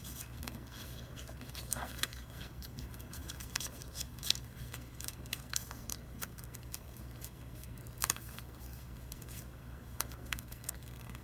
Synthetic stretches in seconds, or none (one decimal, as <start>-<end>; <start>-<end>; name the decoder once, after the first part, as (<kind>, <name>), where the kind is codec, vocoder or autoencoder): 0.0-11.2 (codec, SNAC)